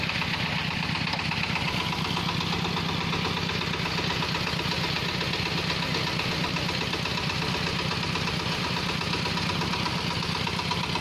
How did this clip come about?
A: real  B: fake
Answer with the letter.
A